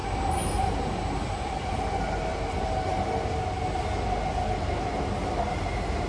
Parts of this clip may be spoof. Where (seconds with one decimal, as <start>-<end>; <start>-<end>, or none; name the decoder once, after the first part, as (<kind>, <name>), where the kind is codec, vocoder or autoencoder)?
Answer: none

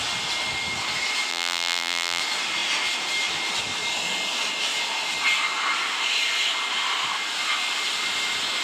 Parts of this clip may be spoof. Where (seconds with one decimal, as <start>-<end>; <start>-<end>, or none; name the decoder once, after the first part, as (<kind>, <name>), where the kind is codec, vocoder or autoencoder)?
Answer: 1.3-2.2 (vocoder, BigVGAN v2)

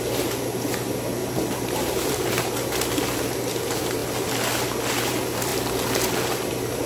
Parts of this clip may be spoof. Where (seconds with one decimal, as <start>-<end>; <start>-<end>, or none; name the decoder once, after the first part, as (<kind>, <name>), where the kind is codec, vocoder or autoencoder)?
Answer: 1.2-2.5 (vocoder, BigVGAN v2)

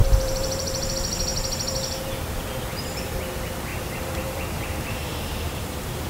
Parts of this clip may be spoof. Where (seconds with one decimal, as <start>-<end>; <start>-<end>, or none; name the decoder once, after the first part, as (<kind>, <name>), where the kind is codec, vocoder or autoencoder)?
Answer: 0.0-0.9 (vocoder, BigVGAN v2); 3.7-6.1

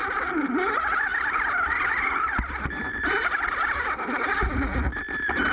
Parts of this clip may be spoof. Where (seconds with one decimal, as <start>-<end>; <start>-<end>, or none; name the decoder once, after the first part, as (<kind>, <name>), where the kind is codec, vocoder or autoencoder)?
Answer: 1.1-2.2 (vocoder, BigVGAN v2); 3.1-5.5

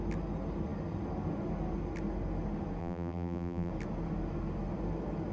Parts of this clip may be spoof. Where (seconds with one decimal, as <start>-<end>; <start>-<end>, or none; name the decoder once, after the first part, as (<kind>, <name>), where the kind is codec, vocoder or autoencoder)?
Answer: 2.8-3.7 (vocoder, BigVGAN v2)